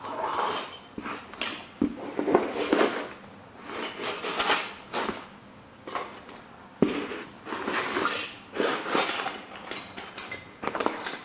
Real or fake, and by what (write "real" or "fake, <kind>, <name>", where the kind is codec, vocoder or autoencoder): real